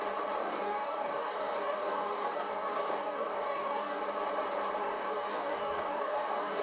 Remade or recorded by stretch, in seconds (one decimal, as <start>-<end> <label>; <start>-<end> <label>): 0.0-0.4 recorded; 0.4-4.0 remade; 4.0-4.8 recorded; 4.8-6.6 remade